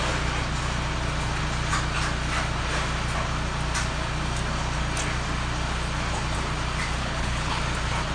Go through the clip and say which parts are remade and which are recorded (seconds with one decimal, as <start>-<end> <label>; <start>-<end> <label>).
0.0-7.0 recorded; 7.0-7.6 remade; 7.6-8.1 recorded

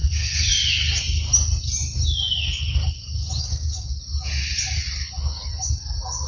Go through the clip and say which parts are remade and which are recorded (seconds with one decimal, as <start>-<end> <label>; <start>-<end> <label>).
0.0-0.5 remade; 0.5-3.4 recorded; 3.4-4.0 remade; 4.0-6.3 recorded

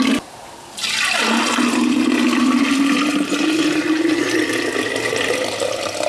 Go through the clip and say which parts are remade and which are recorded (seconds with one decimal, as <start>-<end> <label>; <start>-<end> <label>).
0.0-6.1 recorded

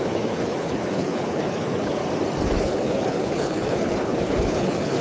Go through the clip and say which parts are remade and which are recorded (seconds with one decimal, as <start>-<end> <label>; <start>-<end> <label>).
0.0-2.0 remade; 2.0-2.5 recorded; 2.5-5.0 remade

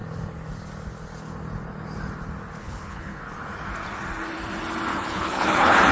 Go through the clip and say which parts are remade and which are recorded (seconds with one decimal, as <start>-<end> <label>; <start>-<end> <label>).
0.0-2.6 recorded; 2.6-3.2 remade; 3.2-4.9 recorded; 4.9-5.9 remade

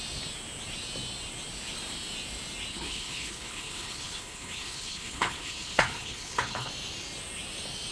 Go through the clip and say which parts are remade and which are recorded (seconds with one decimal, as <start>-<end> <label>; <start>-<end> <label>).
0.0-2.7 recorded; 2.7-6.7 remade; 6.7-7.9 recorded

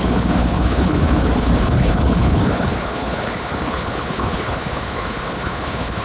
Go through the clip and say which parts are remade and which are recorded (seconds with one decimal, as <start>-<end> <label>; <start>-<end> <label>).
0.0-6.0 remade